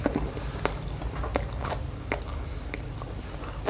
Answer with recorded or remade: recorded